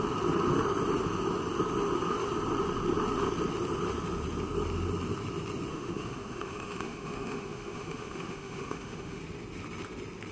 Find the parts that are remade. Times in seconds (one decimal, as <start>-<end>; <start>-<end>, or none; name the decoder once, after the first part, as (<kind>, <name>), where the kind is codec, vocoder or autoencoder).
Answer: 5.7-9.2 (autoencoder, DAC-VAE)